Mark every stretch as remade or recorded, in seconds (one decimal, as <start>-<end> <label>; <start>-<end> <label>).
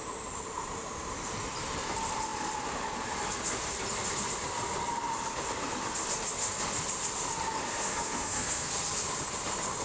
0.0-7.6 recorded; 7.6-8.7 remade; 8.7-9.8 recorded